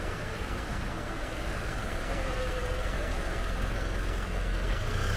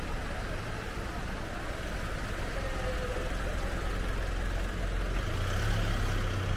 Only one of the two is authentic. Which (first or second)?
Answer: second